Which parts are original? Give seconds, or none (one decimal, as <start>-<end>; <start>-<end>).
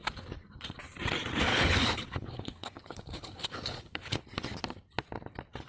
0.0-1.5; 4.2-5.7